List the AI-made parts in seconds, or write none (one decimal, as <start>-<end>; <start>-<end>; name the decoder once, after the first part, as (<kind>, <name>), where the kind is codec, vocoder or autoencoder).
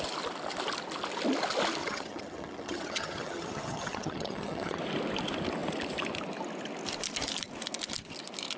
1.8-4.8 (vocoder, HiFi-GAN)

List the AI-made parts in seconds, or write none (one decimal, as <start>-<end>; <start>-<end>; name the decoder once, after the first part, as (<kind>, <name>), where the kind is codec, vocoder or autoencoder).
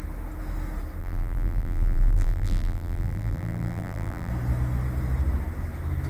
1.0-4.3 (vocoder, BigVGAN v2)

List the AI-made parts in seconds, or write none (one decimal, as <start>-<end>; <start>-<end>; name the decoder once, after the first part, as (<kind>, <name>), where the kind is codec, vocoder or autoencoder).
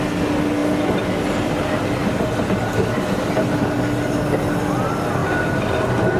2.0-3.3 (vocoder, BigVGAN v2)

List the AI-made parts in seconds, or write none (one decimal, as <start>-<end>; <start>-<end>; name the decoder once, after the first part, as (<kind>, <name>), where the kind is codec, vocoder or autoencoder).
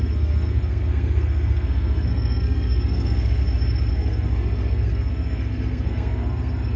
0.0-3.4 (codec, SNAC); 3.9-6.8